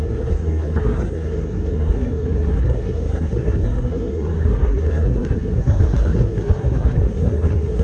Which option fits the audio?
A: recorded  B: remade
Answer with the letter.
B